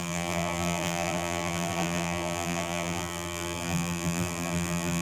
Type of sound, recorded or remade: remade